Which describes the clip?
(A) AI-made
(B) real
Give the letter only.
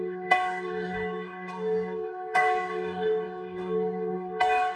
A